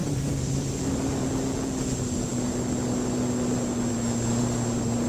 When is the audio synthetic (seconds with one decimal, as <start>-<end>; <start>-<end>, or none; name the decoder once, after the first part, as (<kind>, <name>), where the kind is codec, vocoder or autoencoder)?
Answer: 0.0-0.7 (vocoder, BigVGAN v2)